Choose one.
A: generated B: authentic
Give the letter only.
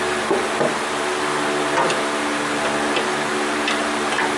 B